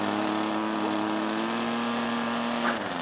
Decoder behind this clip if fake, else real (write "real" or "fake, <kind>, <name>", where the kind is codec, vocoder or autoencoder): real